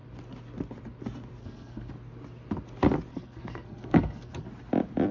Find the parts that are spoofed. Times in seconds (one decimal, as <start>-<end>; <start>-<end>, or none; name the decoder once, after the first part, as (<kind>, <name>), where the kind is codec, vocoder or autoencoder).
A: 1.4-1.9 (codec, SNAC); 3.1-4.5